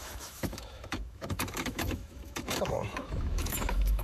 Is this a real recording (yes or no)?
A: no